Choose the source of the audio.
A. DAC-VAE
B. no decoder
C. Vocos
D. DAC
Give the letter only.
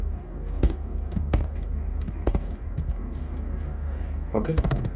D